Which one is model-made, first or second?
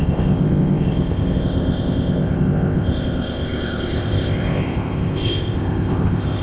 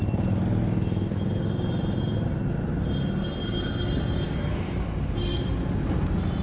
first